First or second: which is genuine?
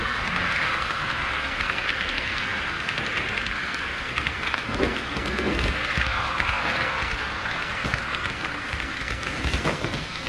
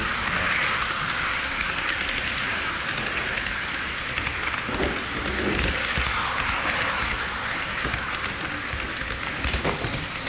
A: second